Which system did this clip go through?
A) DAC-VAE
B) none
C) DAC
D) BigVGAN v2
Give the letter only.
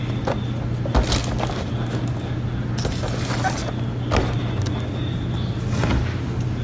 B